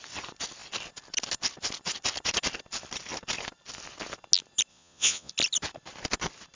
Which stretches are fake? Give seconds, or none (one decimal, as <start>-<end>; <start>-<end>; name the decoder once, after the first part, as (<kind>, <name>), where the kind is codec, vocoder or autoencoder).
4.7-5.3 (vocoder, Vocos)